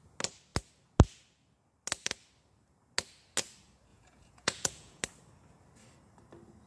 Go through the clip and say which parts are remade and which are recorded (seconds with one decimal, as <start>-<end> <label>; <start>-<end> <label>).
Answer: 0.0-3.9 recorded; 3.9-5.0 remade; 5.0-6.7 recorded